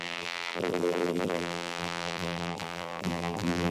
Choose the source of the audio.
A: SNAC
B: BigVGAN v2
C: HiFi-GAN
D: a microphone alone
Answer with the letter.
B